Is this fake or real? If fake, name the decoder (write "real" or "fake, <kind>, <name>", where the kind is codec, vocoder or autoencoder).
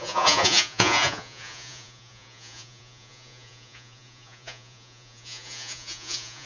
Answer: fake, vocoder, Vocos